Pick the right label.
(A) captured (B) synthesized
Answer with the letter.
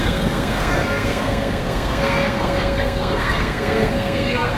B